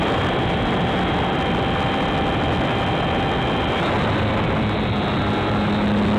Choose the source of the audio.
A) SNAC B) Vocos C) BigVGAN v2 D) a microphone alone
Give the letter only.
D